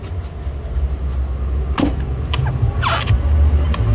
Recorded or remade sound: recorded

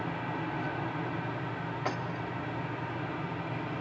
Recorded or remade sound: recorded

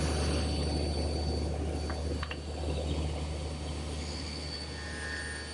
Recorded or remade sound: recorded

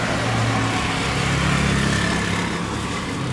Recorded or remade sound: recorded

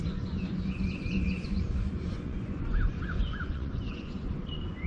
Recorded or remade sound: remade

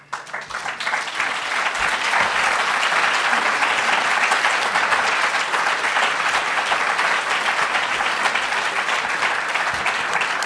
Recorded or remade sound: recorded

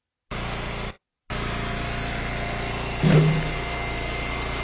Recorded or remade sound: recorded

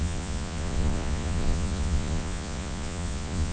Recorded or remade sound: remade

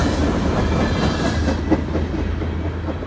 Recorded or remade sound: recorded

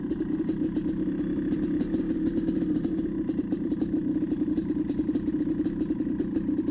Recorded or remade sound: remade